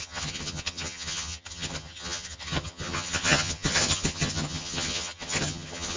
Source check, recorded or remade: remade